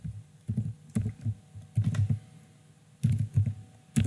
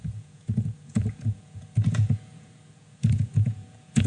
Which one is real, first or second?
first